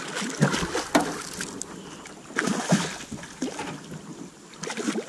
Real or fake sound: real